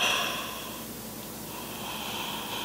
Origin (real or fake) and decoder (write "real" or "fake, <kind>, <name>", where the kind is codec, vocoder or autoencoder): real